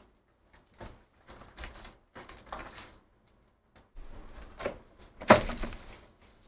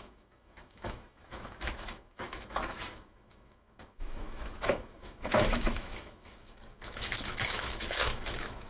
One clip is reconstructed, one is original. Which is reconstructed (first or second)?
second